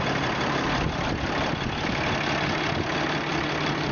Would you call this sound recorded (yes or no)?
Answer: yes